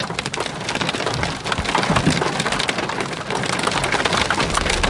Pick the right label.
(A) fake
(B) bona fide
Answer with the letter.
B